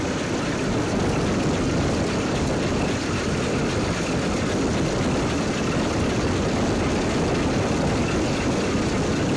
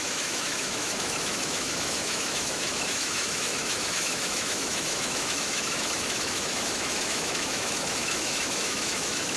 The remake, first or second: second